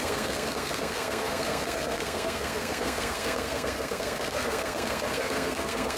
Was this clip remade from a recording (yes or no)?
yes